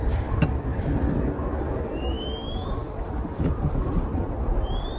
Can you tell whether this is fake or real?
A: fake